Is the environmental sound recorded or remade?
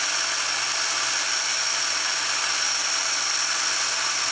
recorded